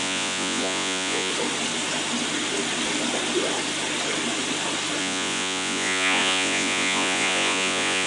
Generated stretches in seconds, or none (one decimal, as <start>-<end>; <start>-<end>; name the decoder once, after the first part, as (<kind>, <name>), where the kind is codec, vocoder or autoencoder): 0.0-1.3 (vocoder, Vocos); 5.0-8.1